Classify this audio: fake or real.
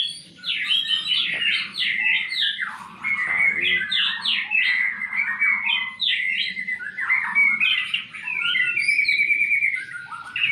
real